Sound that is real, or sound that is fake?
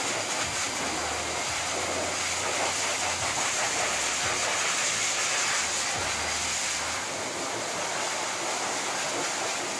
real